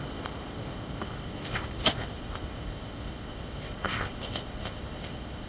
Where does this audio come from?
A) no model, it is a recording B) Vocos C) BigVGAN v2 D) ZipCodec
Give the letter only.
D